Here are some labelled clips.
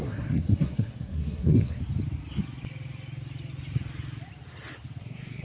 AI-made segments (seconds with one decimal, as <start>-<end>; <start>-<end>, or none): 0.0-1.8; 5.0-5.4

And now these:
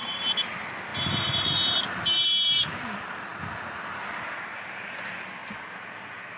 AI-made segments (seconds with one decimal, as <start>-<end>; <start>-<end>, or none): none

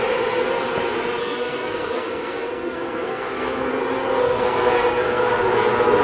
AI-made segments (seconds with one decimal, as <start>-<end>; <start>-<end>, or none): 1.2-3.7; 4.2-5.3

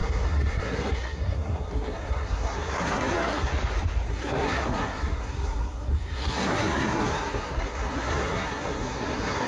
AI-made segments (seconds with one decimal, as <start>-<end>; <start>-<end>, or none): 0.0-3.5; 4.1-9.5

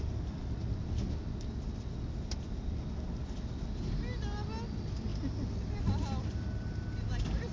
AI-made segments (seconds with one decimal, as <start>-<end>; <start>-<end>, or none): none

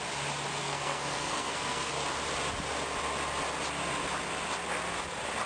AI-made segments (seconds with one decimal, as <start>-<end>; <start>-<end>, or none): 0.6-1.9

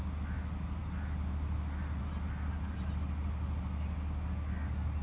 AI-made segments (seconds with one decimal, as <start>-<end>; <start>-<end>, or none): none